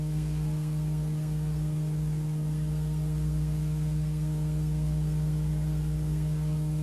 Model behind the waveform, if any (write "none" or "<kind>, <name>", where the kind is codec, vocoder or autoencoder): codec, SNAC